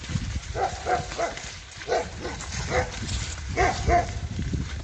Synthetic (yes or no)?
no